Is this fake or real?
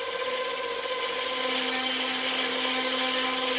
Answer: real